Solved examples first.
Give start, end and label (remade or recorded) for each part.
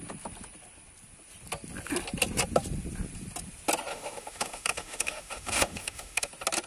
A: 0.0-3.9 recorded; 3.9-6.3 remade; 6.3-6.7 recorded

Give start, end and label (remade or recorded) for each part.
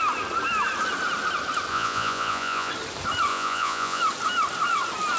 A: 0.0-1.7 recorded; 1.7-2.7 remade; 2.7-3.3 recorded; 3.3-4.0 remade; 4.0-5.2 recorded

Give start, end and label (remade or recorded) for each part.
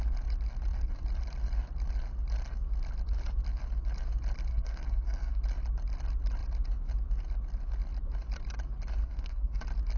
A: 0.0-4.5 recorded; 4.5-5.4 remade; 5.4-9.0 recorded; 9.0-9.6 remade; 9.6-10.0 recorded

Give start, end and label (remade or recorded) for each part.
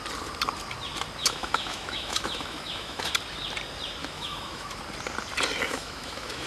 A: 0.0-1.2 recorded; 1.2-3.1 remade; 3.1-4.0 recorded; 4.0-4.8 remade; 4.8-5.7 recorded; 5.7-6.5 remade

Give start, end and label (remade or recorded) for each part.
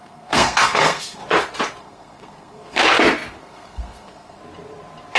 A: 0.0-1.2 remade; 1.2-1.8 recorded; 1.8-2.8 remade; 2.8-3.4 recorded; 3.4-4.4 remade; 4.4-5.2 recorded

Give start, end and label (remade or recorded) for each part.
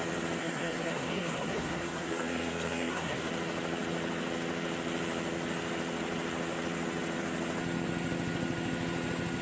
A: 0.0-0.4 recorded; 0.4-3.3 remade; 3.3-9.4 recorded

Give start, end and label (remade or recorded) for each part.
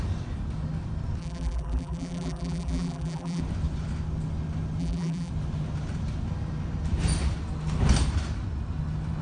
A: 0.0-1.2 recorded; 1.2-3.4 remade; 3.4-4.8 recorded; 4.8-5.3 remade; 5.3-9.2 recorded